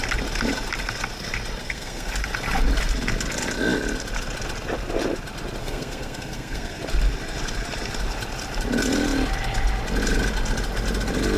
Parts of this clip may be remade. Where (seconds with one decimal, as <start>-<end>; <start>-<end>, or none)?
1.6-2.1; 5.6-6.8